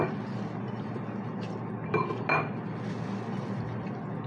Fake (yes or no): no